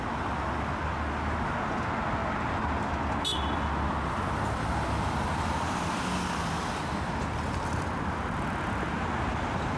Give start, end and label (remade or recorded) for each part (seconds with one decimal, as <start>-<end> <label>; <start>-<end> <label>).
0.0-9.8 recorded